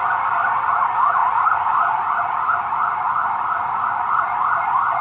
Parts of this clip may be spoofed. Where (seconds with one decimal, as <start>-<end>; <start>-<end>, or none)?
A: none